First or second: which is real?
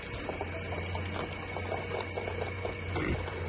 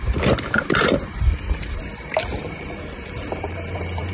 first